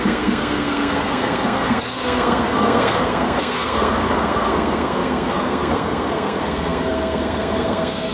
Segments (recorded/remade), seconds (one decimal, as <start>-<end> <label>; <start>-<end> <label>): 0.0-8.1 remade